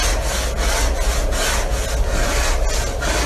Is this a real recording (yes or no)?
yes